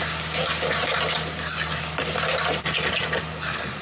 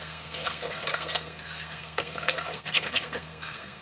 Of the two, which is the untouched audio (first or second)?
first